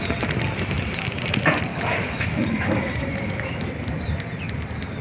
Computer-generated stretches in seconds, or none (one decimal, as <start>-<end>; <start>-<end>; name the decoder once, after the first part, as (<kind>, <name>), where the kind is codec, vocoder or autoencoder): 1.7-3.6 (autoencoder, DAC-VAE)